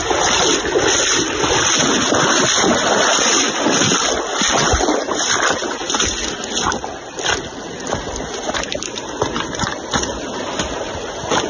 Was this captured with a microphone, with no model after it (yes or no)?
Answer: yes